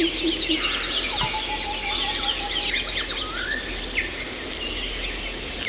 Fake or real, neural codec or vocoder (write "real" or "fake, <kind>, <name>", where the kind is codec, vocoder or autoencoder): real